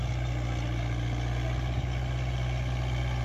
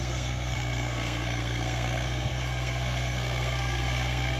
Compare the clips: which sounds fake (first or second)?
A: second